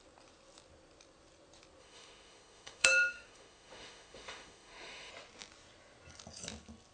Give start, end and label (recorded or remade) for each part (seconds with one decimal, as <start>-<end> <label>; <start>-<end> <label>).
0.0-1.8 recorded; 1.8-5.1 remade; 5.1-6.9 recorded